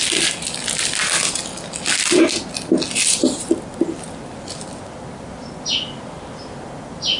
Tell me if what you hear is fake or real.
real